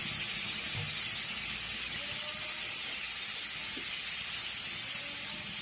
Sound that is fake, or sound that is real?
real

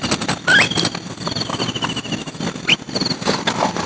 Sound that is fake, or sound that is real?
real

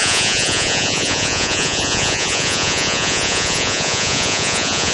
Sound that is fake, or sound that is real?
fake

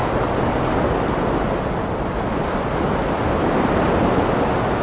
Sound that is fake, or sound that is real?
real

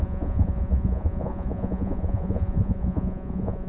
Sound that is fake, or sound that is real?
fake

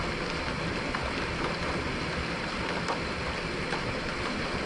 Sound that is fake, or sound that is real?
real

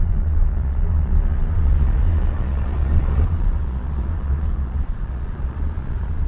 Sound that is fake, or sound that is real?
fake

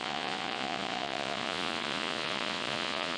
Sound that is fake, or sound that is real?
fake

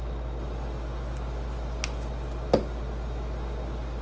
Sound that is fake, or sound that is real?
real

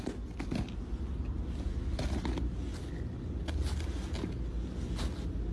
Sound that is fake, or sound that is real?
real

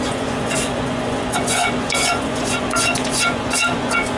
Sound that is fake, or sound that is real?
fake